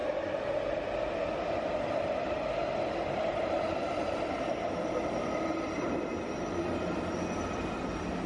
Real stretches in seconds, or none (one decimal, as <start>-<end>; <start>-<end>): 0.0-8.3